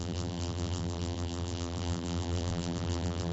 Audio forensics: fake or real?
fake